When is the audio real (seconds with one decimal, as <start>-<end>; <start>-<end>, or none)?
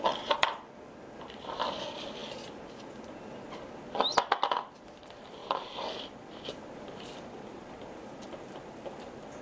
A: 2.2-4.7